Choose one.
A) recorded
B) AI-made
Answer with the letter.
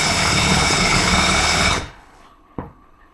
B